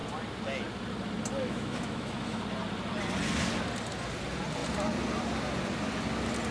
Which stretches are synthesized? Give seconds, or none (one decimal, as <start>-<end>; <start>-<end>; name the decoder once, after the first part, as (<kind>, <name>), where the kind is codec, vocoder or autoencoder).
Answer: 1.4-2.4 (autoencoder, DAC-VAE)